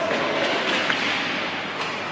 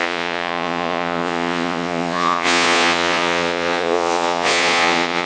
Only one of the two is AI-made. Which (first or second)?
second